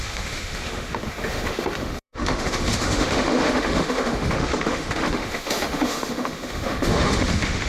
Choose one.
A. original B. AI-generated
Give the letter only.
B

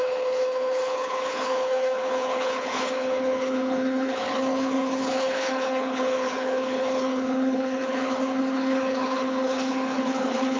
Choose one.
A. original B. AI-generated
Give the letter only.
B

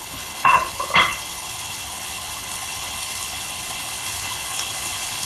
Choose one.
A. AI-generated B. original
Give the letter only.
A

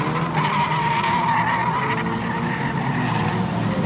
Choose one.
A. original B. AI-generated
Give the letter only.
A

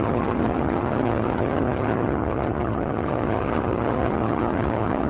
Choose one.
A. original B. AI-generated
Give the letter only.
B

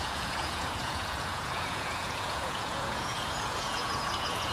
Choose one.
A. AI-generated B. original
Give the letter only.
A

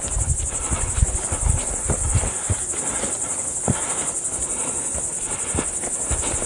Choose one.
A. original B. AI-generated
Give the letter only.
B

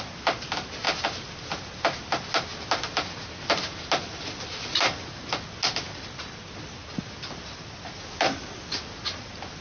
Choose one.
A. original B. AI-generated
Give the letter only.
A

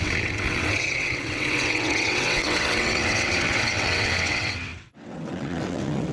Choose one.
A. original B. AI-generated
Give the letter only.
B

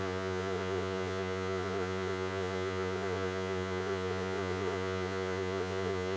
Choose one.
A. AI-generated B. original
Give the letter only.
A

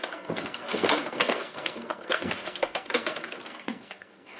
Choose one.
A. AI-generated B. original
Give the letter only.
A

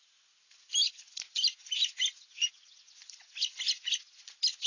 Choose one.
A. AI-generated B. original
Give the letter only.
B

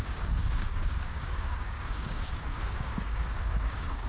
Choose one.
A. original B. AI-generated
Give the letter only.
B